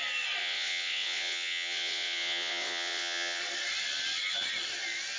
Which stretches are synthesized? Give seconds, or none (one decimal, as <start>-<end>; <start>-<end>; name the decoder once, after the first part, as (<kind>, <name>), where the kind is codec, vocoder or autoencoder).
0.4-3.4 (vocoder, WaveNeXt)